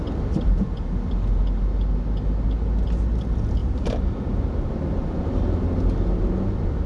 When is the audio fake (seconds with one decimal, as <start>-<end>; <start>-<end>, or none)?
3.6-5.4